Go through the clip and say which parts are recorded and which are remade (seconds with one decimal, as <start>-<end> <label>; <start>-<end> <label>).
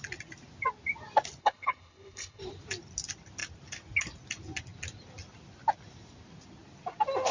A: 0.0-1.4 recorded; 1.4-2.4 remade; 2.4-7.3 recorded